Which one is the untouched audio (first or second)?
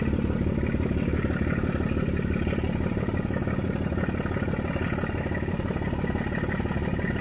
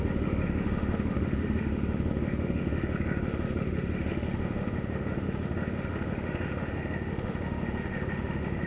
first